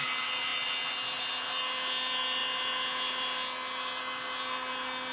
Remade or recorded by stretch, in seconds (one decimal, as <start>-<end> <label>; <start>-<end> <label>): 0.0-5.1 recorded

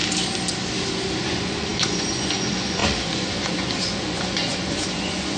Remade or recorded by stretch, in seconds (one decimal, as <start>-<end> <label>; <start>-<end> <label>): 0.0-1.2 recorded; 1.2-5.4 remade

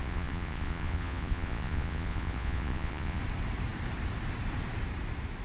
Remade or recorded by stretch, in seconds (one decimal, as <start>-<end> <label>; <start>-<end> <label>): 0.0-3.2 remade; 3.2-5.4 recorded

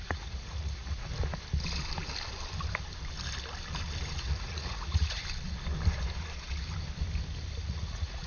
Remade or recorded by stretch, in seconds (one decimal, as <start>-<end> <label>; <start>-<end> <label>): 0.0-1.1 remade; 1.1-4.2 recorded; 4.2-5.2 remade; 5.2-7.6 recorded; 7.6-8.3 remade

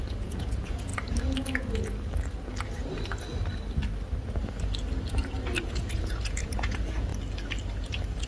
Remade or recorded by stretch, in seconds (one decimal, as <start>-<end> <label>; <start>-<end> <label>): 0.0-0.9 remade; 0.9-5.6 recorded; 5.6-7.1 remade; 7.1-8.3 recorded